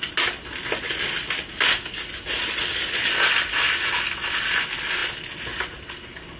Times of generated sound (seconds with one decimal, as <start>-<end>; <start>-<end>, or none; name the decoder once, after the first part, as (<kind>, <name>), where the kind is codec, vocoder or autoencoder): none